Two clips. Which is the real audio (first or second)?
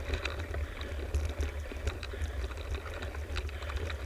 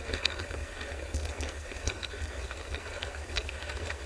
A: first